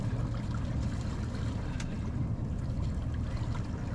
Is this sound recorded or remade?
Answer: recorded